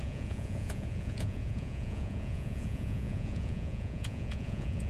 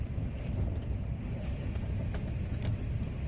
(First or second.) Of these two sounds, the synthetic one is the first